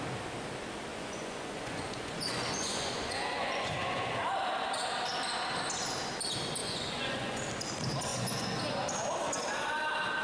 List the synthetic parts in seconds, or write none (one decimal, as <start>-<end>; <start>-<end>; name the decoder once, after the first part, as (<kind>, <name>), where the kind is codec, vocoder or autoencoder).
0.9-4.1 (vocoder, Vocos); 6.6-7.4; 8.1-8.6